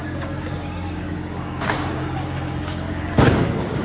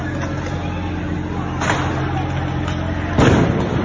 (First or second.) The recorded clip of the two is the second